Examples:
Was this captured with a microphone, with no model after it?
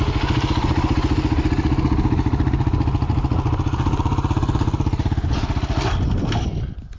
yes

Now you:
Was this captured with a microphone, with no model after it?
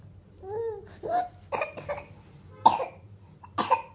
yes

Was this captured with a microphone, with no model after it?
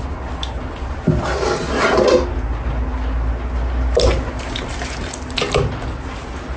yes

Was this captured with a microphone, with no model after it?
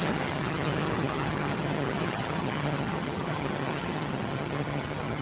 no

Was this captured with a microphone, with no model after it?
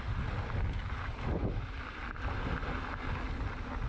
yes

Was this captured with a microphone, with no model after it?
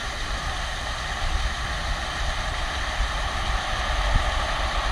yes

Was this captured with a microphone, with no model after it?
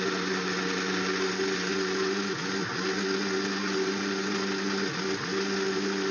yes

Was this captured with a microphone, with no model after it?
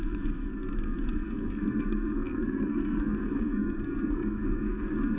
no